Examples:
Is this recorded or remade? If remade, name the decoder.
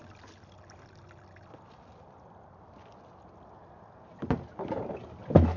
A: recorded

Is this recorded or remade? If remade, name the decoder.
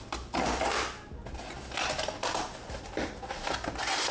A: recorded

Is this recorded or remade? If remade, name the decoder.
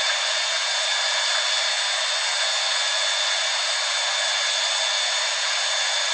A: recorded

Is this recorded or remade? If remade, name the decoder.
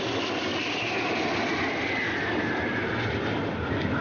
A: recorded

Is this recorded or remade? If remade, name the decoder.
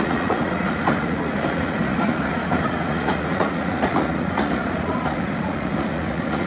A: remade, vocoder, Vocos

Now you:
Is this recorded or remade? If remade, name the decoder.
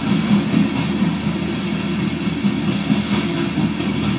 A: recorded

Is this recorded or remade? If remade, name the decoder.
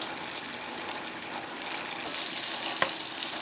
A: recorded